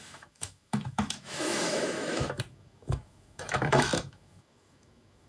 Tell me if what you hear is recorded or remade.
remade